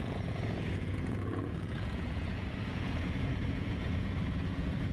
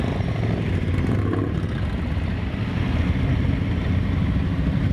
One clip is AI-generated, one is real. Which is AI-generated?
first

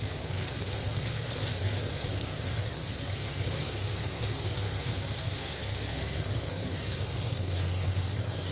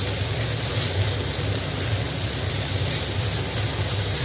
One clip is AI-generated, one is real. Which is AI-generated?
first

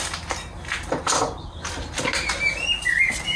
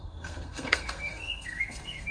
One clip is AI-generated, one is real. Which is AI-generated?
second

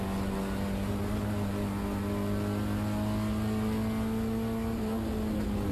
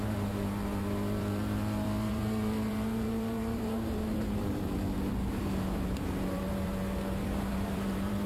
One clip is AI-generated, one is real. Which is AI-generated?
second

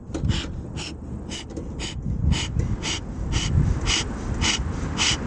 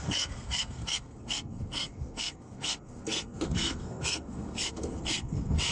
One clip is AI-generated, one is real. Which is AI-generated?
second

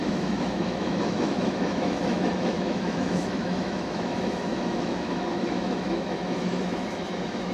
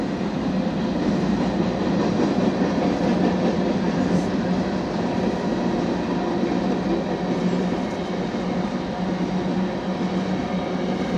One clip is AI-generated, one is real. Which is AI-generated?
first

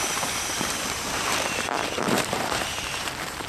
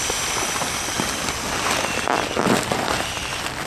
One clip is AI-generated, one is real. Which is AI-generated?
first